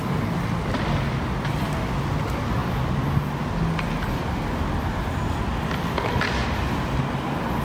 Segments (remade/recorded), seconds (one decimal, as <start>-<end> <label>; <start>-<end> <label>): 0.0-7.6 recorded